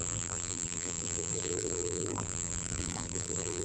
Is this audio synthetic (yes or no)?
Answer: yes